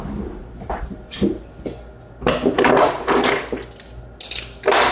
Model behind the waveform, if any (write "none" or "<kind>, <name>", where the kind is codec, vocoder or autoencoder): none